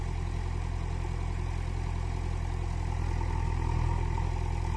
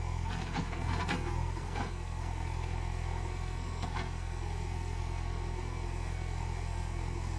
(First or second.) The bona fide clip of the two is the first